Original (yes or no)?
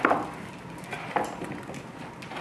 yes